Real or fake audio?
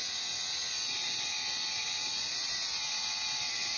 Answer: fake